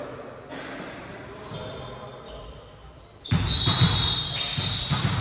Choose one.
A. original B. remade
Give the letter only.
A